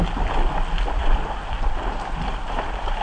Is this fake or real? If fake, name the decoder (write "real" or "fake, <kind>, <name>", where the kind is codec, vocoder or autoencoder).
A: real